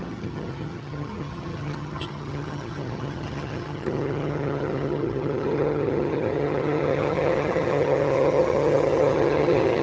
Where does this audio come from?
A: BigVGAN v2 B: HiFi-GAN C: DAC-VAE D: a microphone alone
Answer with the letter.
B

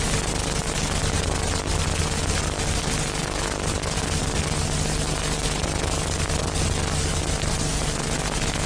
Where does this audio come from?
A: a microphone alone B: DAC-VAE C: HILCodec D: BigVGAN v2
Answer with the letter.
A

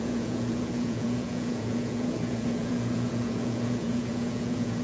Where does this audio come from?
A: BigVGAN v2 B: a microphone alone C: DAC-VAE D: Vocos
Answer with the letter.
D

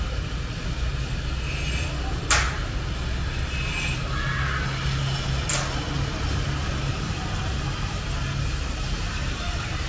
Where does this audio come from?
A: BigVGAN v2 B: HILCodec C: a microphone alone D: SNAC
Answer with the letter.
C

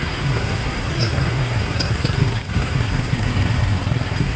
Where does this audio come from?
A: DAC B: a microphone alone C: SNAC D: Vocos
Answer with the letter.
C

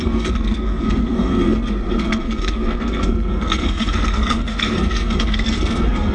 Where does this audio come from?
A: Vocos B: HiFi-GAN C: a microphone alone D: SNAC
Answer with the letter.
D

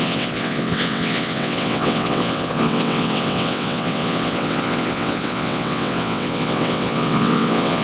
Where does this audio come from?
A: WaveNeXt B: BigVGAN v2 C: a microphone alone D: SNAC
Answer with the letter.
A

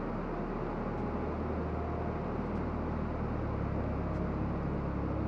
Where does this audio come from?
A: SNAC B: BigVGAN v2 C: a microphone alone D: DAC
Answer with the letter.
C